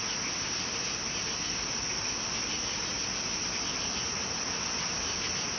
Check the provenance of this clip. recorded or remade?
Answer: recorded